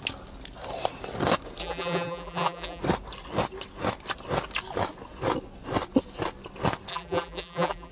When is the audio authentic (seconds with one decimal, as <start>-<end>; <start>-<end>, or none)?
0.0-1.6; 2.8-6.9